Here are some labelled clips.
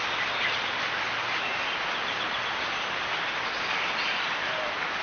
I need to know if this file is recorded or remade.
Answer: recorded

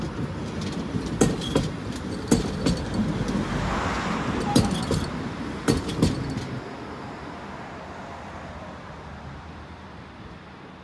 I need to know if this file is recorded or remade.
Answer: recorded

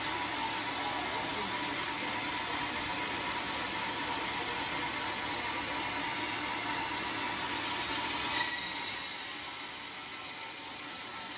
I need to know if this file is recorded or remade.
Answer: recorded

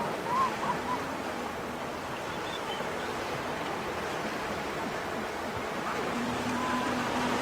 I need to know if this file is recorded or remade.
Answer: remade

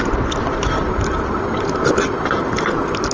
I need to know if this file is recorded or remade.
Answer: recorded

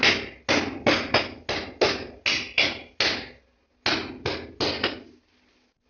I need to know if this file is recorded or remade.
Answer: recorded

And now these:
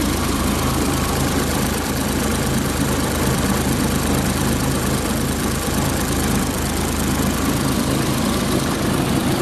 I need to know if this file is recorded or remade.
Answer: remade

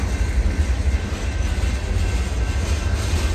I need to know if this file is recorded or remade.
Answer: recorded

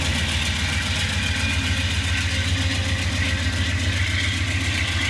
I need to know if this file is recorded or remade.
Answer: recorded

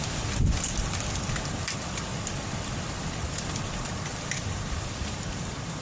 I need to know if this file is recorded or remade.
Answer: remade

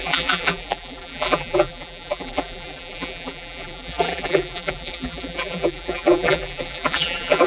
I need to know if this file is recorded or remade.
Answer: remade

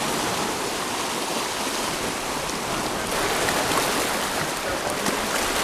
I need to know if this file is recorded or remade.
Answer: remade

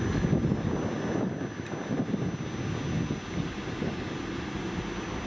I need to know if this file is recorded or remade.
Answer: recorded